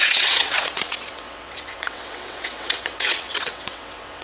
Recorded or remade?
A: remade